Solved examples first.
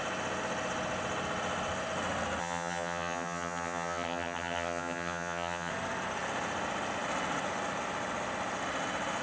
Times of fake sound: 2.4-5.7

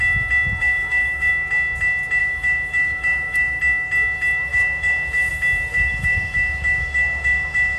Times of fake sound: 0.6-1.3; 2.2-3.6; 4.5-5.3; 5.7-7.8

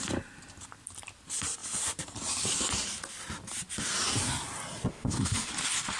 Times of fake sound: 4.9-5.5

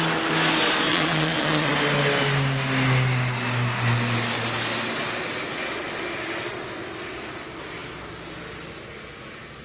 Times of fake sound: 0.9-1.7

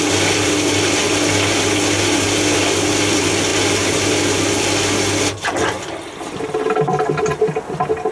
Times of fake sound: none

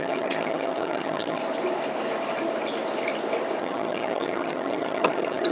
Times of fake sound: 0.0-1.4; 3.6-5.5

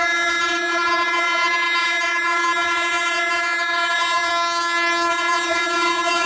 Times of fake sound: 0.0-4.3; 5.1-6.3

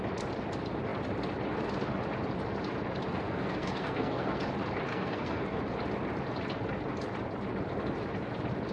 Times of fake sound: 3.1-4.4; 4.9-5.6